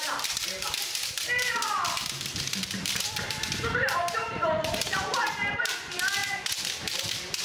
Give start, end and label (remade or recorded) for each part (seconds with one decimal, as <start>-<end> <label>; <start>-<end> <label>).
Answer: 0.0-6.2 remade; 6.2-6.8 recorded; 6.8-7.4 remade